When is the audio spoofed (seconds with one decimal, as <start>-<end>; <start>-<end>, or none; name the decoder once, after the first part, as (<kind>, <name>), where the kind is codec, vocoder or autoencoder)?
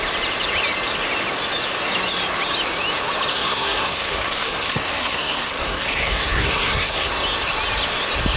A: 3.3-7.1 (codec, SNAC)